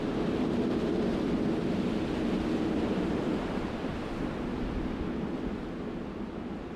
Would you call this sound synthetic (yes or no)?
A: no